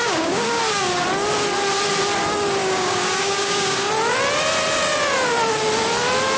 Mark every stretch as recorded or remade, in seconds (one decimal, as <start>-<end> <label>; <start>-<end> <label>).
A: 0.0-0.6 remade; 0.6-2.6 recorded; 2.6-3.9 remade; 3.9-6.4 recorded